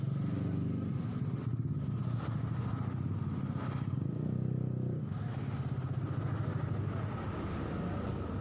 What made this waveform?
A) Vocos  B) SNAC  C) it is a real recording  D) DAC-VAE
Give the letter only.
C